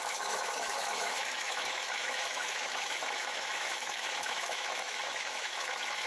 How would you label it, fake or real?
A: fake